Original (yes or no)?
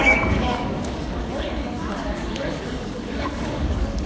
no